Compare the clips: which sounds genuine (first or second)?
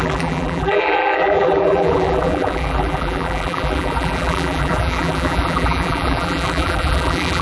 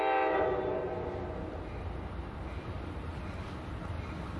second